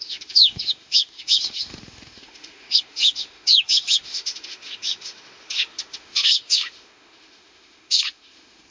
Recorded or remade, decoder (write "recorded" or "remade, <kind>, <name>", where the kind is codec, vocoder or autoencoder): remade, autoencoder, DAC-VAE